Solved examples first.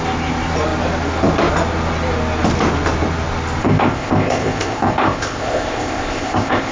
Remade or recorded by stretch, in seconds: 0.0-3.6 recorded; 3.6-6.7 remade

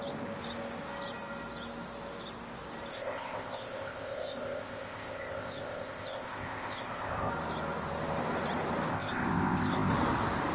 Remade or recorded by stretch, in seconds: 0.0-2.9 recorded; 2.9-7.3 remade; 7.3-8.9 recorded; 8.9-9.9 remade; 9.9-10.5 recorded

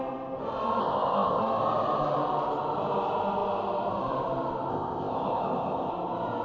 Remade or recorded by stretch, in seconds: 0.0-0.8 recorded; 0.8-1.4 remade; 1.4-4.7 recorded; 4.7-5.9 remade; 5.9-6.4 recorded

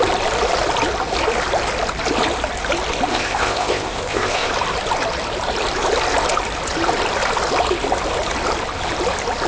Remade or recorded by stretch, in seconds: 0.0-3.1 recorded; 3.1-4.5 remade; 4.5-9.5 recorded

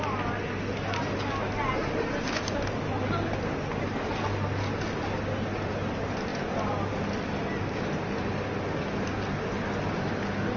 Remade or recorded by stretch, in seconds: 0.0-10.6 recorded